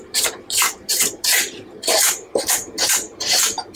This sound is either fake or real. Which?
fake